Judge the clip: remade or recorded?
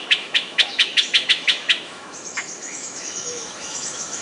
remade